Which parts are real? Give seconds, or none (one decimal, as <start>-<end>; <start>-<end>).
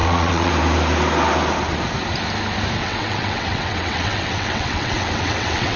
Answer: 0.5-2.8